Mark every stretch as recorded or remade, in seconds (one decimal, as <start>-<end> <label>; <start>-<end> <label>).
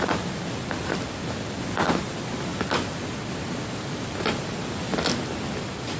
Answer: 0.0-6.0 recorded